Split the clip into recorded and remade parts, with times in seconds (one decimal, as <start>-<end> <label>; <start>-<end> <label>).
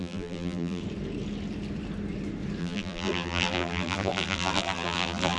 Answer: 0.0-0.8 remade; 0.8-2.6 recorded; 2.6-5.4 remade